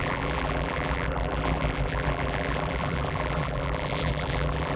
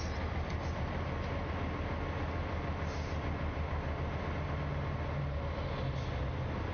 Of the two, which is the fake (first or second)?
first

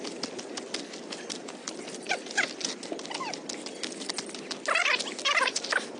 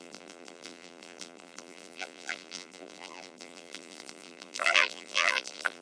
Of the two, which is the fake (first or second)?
second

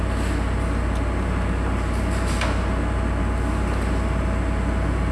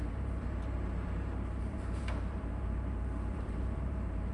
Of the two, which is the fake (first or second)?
second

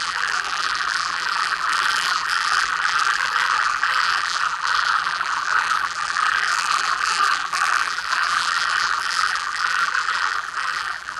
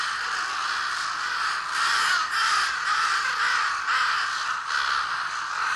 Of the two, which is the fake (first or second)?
first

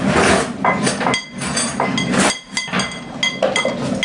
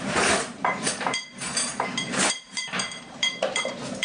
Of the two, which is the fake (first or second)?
second